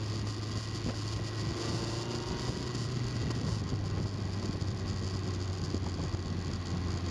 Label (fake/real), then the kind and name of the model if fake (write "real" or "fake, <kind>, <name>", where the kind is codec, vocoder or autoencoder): real